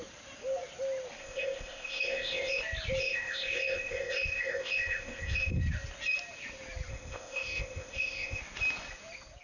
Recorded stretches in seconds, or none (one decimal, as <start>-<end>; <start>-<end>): 0.0-1.2; 2.6-3.0; 5.6-6.9; 8.4-9.4